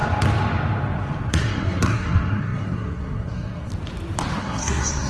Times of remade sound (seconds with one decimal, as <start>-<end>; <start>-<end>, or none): 1.3-3.7; 4.4-5.1